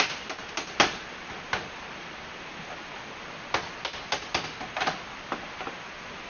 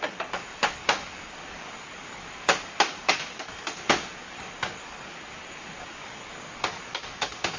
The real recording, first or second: first